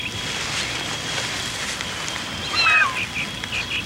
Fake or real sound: real